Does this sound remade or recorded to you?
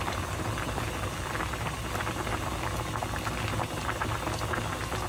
recorded